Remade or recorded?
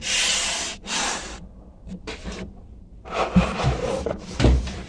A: remade